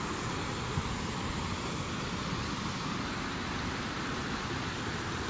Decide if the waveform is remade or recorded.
recorded